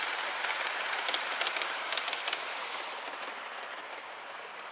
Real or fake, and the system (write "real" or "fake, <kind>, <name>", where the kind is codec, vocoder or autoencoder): real